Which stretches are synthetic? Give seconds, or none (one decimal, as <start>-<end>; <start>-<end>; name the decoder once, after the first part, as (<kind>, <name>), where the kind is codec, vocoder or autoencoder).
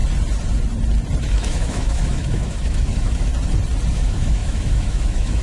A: 1.2-3.3 (autoencoder, DAC-VAE); 3.9-5.4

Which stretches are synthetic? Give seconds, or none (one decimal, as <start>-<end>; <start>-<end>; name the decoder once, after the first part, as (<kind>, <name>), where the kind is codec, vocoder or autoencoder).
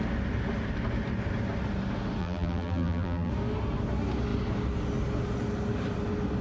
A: 2.2-3.3 (vocoder, BigVGAN v2)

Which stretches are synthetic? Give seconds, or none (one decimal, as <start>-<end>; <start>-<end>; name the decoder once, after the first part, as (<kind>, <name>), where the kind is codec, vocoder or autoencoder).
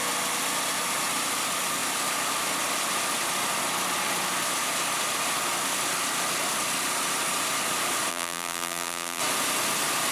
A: 8.1-9.2 (vocoder, BigVGAN v2)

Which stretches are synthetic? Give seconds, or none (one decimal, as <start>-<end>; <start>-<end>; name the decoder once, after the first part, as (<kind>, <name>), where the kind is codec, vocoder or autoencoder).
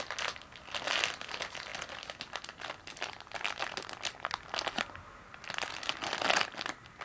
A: none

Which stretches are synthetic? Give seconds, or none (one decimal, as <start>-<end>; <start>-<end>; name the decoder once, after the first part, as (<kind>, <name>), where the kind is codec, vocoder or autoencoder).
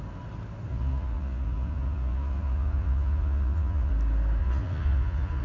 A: 0.7-3.9 (vocoder, Vocos); 4.4-5.4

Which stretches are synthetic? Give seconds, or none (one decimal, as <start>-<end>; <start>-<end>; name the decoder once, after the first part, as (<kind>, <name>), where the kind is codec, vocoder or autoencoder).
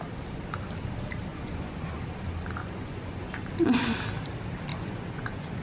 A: 1.3-2.0 (vocoder, Vocos); 2.6-3.5; 4.7-5.6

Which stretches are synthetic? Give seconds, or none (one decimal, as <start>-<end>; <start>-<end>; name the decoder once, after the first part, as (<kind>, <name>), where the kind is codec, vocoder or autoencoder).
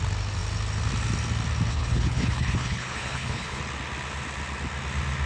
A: 1.7-3.6 (codec, HILCodec)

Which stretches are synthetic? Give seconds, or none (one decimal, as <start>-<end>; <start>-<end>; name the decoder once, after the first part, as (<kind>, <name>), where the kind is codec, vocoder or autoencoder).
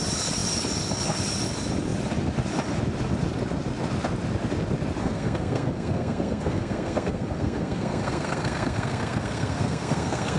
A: 5.0-10.4 (codec, SNAC)